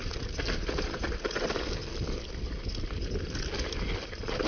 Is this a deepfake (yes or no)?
no